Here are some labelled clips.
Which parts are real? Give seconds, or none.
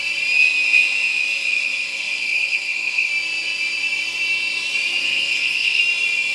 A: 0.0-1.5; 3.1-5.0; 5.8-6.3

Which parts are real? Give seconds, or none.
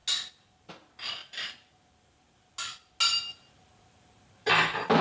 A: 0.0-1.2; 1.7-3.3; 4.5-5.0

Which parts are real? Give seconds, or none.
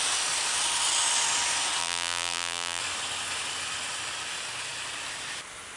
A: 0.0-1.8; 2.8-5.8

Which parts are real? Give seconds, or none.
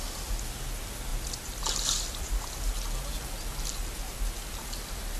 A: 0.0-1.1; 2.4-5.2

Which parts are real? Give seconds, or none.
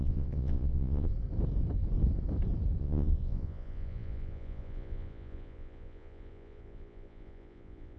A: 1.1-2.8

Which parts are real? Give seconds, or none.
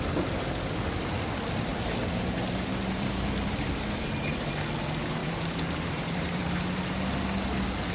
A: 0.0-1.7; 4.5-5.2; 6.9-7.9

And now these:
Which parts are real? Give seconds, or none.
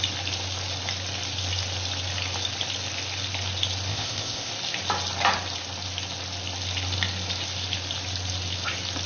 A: 0.0-3.9; 4.5-9.1